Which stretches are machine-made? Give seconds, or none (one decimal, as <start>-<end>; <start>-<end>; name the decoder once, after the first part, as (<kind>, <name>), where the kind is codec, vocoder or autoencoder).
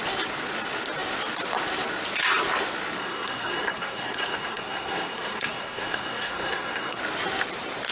3.0-7.0 (codec, SNAC)